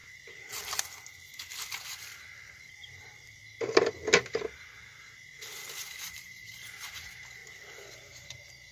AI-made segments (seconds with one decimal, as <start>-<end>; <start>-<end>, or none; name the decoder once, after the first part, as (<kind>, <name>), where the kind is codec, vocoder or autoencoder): 2.7-3.4 (vocoder, BigVGAN v2); 6.0-7.4; 7.9-8.7